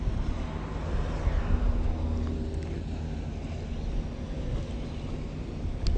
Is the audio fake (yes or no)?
no